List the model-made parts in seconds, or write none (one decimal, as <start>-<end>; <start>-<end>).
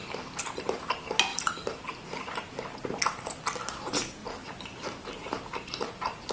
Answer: 0.0-0.9; 1.3-1.9